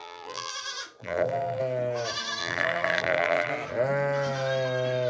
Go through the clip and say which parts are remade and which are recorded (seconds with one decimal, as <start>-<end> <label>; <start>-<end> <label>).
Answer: 0.0-0.5 remade; 0.5-1.0 recorded; 1.0-1.6 remade; 1.6-2.4 recorded; 2.4-3.5 remade; 3.5-5.1 recorded